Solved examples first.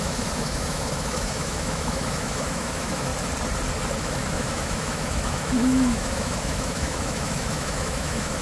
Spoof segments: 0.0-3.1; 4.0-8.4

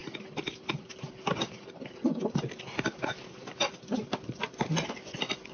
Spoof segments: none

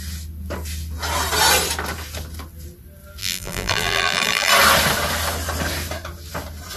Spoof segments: 3.2-4.5